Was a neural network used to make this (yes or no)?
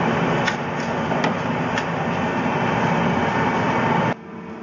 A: no